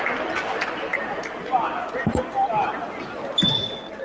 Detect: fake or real real